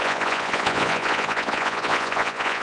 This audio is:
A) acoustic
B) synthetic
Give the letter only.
B